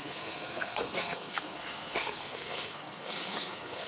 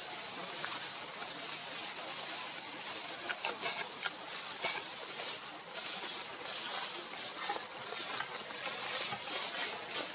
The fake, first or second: first